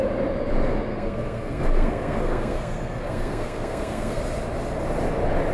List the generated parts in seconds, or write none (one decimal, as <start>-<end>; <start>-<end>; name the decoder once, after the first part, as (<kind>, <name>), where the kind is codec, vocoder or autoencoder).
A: 0.9-4.2 (codec, SNAC)